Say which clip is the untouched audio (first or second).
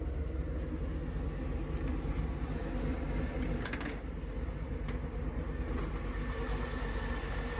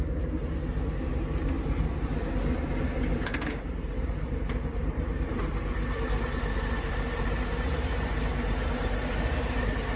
first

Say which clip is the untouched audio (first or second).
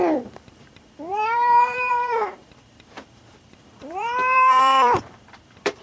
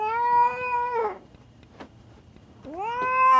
second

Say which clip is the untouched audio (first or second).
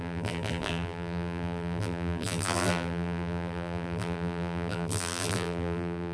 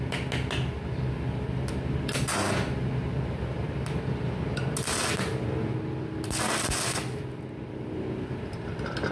second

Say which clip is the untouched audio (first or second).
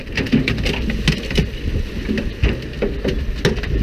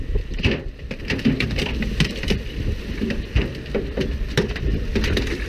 first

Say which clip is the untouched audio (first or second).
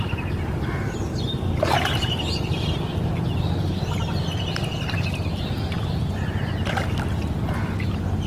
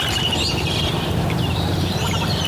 first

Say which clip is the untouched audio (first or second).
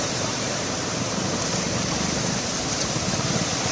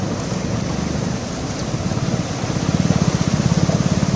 second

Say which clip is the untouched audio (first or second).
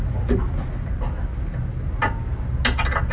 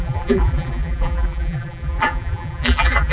first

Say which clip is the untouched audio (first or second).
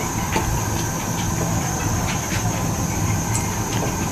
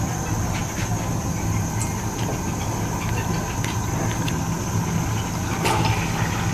second